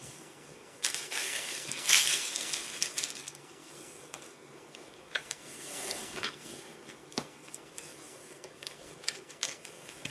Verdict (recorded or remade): remade